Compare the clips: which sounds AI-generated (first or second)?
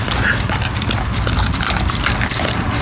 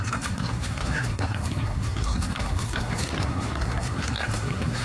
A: second